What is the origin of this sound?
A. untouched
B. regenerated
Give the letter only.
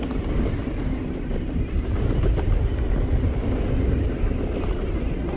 A